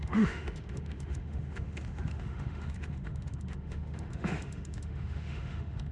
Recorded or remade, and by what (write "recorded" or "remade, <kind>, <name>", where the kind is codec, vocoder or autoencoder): remade, autoencoder, DAC-VAE